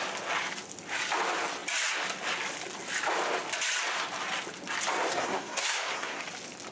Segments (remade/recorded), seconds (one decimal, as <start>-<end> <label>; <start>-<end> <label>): 0.0-5.1 recorded; 5.1-6.2 remade; 6.2-6.7 recorded